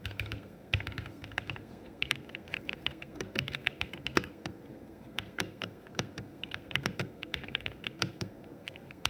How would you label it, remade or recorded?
remade